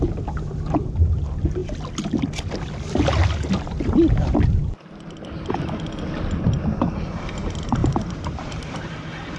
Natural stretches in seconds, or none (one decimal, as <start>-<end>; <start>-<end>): 0.0-7.8

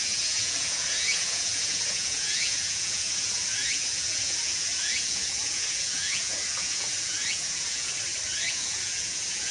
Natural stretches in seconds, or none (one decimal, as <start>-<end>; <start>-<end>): 7.9-8.5

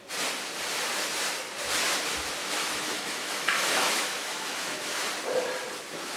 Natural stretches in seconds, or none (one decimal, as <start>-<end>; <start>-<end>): 0.0-2.4; 5.1-6.2

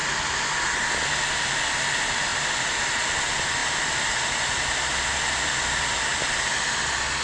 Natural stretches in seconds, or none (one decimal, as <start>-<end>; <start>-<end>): 0.0-7.2

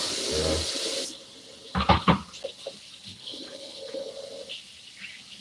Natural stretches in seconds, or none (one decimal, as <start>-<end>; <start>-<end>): 0.0-3.1; 4.1-5.4